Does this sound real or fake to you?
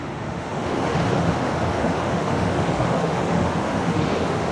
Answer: fake